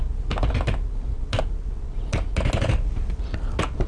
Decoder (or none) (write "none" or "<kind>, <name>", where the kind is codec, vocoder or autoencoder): none